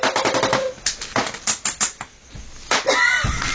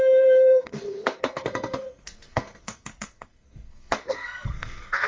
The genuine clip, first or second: first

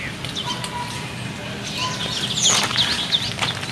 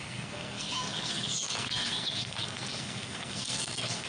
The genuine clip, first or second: first